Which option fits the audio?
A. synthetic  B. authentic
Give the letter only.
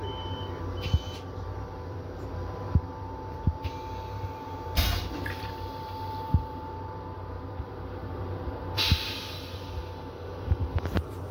A